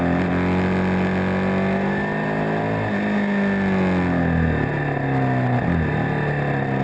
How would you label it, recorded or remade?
recorded